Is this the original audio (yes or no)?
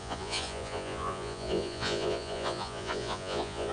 no